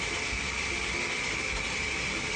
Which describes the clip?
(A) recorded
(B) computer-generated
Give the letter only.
A